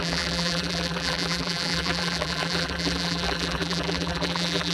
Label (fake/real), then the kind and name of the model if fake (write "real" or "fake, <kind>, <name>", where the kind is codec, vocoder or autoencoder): fake, vocoder, BigVGAN v2